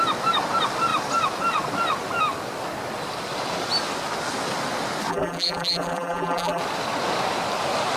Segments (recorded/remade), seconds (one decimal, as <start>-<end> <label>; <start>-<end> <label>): 0.0-5.1 recorded; 5.1-6.6 remade; 6.6-8.0 recorded

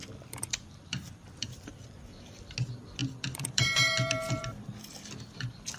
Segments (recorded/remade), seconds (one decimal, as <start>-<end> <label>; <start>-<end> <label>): 0.0-0.8 recorded; 0.8-1.7 remade; 1.7-3.0 recorded; 3.0-5.3 remade; 5.3-5.8 recorded

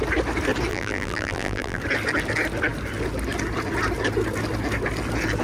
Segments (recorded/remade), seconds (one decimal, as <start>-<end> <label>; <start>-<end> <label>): 0.0-0.7 recorded; 0.7-1.8 remade; 1.8-5.4 recorded

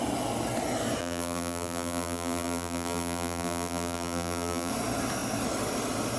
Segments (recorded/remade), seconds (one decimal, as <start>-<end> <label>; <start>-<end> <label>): 0.0-1.0 recorded; 1.0-4.7 remade; 4.7-6.2 recorded

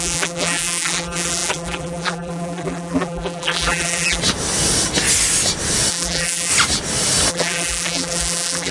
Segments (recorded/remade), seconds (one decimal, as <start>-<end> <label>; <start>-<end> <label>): 0.0-4.2 remade; 4.2-5.9 recorded; 5.9-6.5 remade; 6.5-7.3 recorded; 7.3-8.7 remade

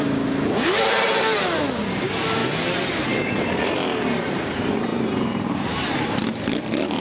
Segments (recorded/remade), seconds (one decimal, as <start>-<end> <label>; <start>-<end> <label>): 0.0-2.4 remade; 2.4-2.9 recorded; 2.9-7.0 remade